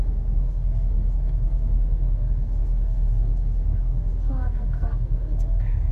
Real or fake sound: fake